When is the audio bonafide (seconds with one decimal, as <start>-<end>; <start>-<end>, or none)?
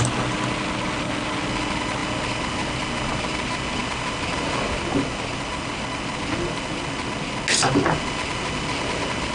0.0-9.3